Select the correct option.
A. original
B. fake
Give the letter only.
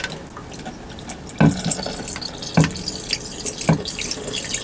A